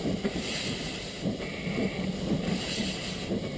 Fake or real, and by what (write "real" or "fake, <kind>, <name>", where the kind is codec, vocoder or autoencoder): fake, vocoder, BigVGAN v2